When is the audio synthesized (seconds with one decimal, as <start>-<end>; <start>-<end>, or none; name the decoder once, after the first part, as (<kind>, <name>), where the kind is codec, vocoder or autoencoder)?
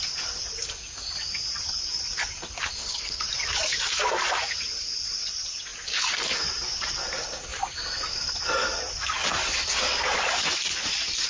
2.8-3.3 (codec, HILCodec)